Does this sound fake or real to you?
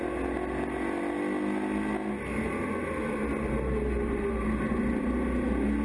real